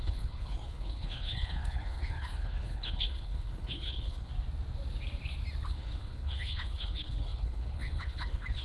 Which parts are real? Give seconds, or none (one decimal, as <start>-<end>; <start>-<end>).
4.3-5.7